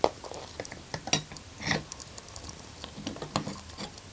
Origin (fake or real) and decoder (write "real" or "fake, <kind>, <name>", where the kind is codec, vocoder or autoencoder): real